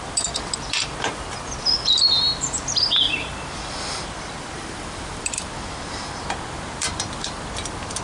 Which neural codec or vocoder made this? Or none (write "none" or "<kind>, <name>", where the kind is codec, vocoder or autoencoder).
vocoder, BigVGAN v2